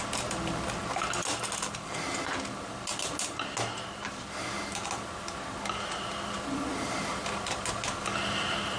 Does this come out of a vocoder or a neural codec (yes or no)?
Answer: no